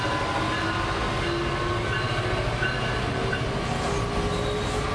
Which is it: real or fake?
real